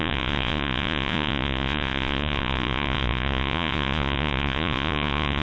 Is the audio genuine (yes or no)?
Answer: no